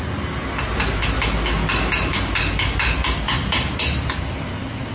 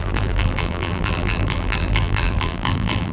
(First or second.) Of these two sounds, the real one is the first